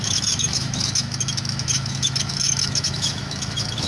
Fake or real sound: fake